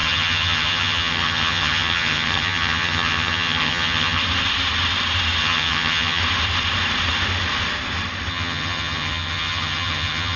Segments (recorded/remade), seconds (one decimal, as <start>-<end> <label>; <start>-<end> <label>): 0.0-4.2 remade; 4.2-5.4 recorded; 5.4-6.2 remade; 6.2-8.3 recorded; 8.3-10.4 remade

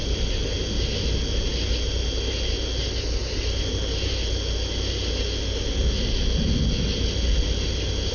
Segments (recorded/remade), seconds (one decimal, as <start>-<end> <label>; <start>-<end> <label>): 0.0-8.1 recorded

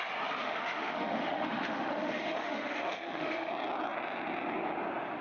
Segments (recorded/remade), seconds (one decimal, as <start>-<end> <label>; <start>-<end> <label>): 0.0-0.4 recorded; 0.4-3.5 remade; 3.5-5.2 recorded

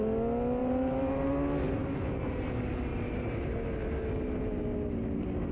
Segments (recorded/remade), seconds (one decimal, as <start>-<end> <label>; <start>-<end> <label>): 0.0-0.6 recorded; 0.6-1.3 remade; 1.3-1.8 recorded; 1.8-2.4 remade; 2.4-2.9 recorded; 2.9-3.4 remade; 3.4-5.5 recorded

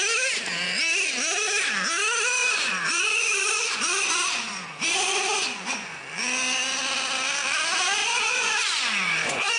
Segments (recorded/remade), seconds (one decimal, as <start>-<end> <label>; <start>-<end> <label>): 0.0-2.4 recorded; 2.4-6.0 remade; 6.0-8.0 recorded; 8.0-9.6 remade

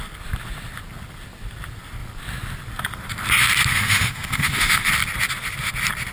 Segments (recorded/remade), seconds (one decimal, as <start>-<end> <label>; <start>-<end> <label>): 0.0-3.7 recorded; 3.7-4.9 remade; 4.9-6.1 recorded

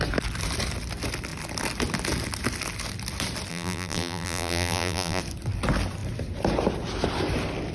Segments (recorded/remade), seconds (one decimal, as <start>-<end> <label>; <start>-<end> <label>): 0.0-3.5 recorded; 3.5-5.2 remade; 5.2-7.7 recorded

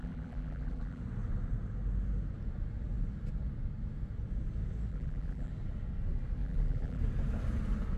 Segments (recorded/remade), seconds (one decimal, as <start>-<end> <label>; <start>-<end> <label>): 0.0-1.0 remade; 1.0-4.9 recorded; 4.9-5.5 remade; 5.5-6.4 recorded; 6.4-7.0 remade; 7.0-8.0 recorded